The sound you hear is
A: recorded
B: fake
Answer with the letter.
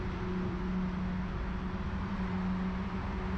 A